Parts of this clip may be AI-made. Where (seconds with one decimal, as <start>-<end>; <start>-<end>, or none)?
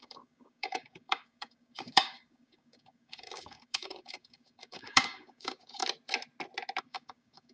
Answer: 0.0-5.8; 6.8-7.5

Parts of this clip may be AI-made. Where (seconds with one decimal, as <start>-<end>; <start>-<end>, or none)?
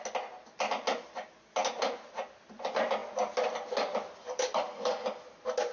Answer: 4.2-5.2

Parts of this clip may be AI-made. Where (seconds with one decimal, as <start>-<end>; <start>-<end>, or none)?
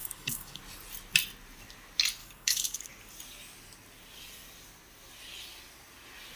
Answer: 0.0-0.6; 2.2-2.9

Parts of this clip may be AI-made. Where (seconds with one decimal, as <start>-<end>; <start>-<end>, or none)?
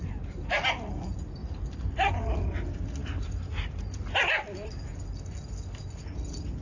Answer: none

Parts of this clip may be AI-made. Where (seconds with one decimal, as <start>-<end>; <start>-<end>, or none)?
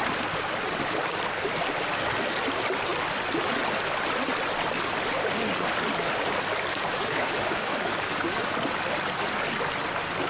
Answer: 6.7-8.5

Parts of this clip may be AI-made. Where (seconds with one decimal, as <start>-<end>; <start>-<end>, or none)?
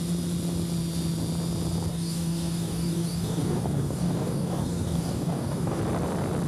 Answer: 1.9-5.8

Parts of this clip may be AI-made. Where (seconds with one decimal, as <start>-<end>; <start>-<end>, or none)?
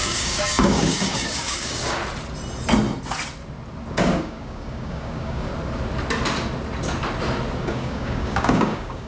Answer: 0.0-2.0; 3.9-5.5; 7.6-9.1